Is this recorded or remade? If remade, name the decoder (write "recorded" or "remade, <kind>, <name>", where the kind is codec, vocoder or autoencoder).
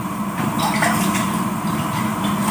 recorded